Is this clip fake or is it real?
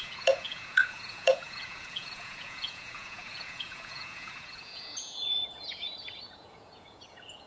fake